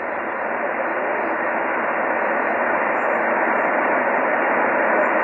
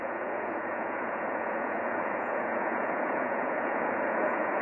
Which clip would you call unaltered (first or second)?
first